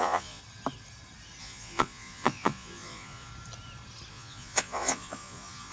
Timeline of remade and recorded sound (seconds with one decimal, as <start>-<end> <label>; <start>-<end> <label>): 0.0-0.4 remade; 0.4-1.4 recorded; 1.4-3.3 remade; 3.3-4.1 recorded; 4.1-5.7 remade